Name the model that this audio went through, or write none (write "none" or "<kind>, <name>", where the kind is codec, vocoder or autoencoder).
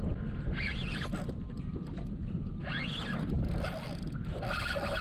none